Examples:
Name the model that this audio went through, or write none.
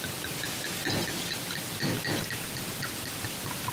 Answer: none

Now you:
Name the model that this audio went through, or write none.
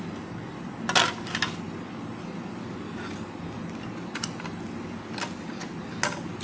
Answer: none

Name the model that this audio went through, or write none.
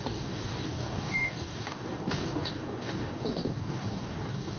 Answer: codec, DAC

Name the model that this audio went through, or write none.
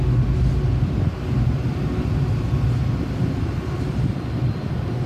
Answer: none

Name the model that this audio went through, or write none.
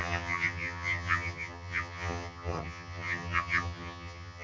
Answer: vocoder, HiFi-GAN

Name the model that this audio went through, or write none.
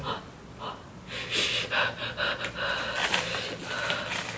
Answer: none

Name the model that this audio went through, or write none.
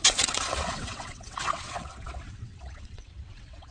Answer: vocoder, WaveNeXt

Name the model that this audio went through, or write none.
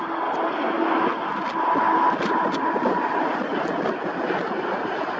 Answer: none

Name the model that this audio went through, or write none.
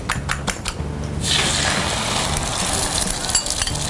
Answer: none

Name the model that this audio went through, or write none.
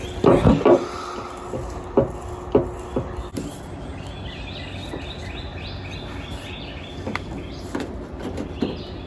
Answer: none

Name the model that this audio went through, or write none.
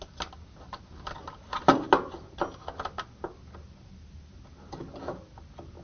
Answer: none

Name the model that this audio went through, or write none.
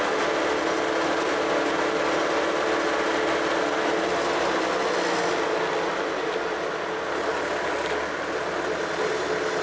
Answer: none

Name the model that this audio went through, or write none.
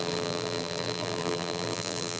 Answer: vocoder, BigVGAN v2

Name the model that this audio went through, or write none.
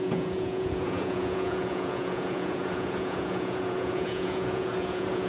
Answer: vocoder, Vocos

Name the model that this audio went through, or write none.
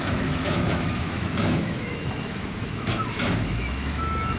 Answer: autoencoder, DAC-VAE